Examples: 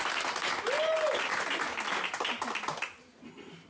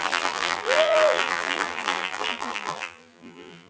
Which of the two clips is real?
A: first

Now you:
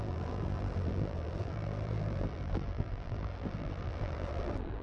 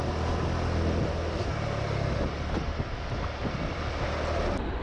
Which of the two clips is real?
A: second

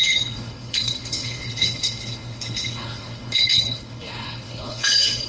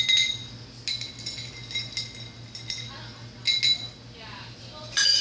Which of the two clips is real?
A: second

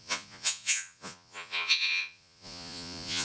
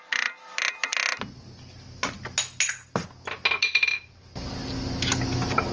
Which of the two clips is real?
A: second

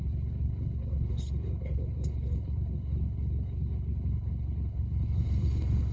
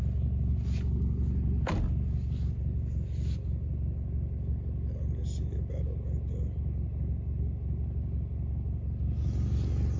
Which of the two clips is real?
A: second